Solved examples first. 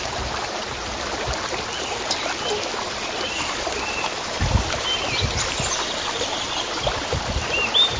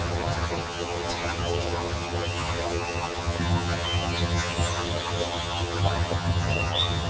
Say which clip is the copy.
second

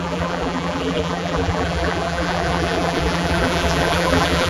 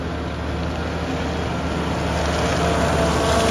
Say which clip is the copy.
first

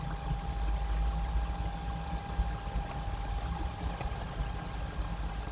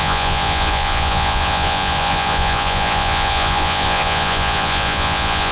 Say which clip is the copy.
second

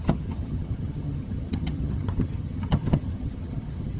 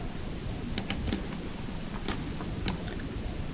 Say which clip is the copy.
first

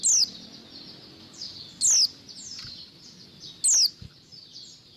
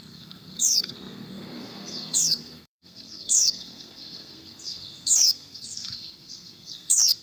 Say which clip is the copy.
second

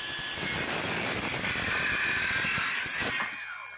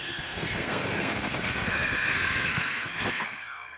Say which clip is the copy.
second